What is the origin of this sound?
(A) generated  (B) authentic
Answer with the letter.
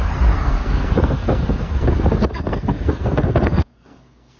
A